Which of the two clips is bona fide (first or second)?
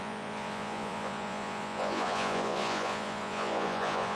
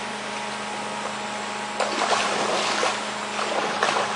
second